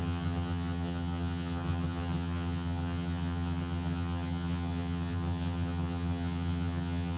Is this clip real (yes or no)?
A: no